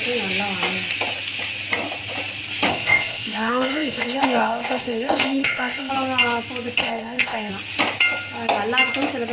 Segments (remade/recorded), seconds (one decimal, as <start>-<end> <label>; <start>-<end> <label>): 0.0-2.7 recorded; 2.7-5.9 remade; 5.9-6.8 recorded; 6.8-7.5 remade; 7.5-9.3 recorded